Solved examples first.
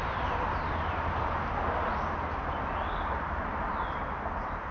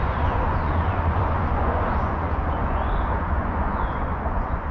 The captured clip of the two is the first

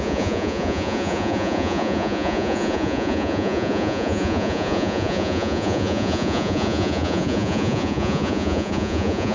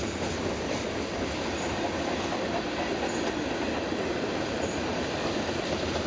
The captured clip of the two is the second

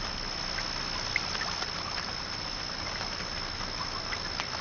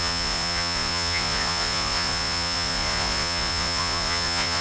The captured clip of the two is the first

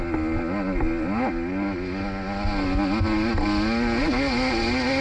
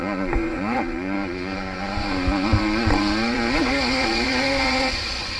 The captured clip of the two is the first